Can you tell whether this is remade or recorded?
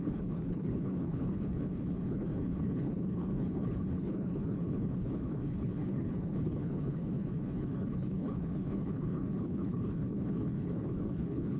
remade